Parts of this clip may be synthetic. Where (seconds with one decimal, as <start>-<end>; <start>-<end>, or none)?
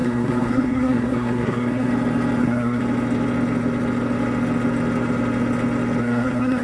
0.0-1.9; 2.4-2.8; 6.0-6.6